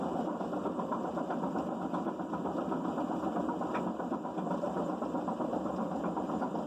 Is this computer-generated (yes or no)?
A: no